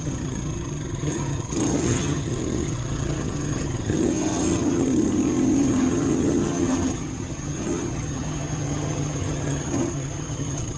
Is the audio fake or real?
fake